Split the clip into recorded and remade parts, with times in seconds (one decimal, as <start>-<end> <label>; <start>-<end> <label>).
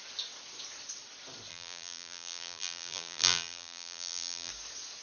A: 0.0-1.5 recorded; 1.5-4.5 remade; 4.5-5.0 recorded